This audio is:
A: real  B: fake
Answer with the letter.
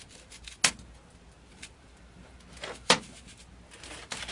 A